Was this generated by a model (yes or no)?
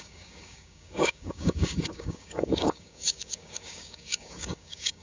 yes